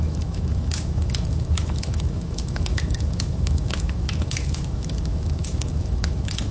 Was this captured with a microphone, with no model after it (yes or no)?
no